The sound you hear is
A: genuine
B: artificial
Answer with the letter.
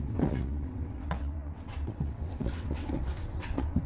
B